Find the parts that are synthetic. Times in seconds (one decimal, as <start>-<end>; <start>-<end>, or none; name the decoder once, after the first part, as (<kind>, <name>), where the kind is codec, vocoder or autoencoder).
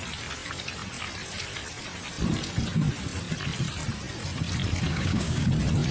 4.9-5.5 (codec, DAC)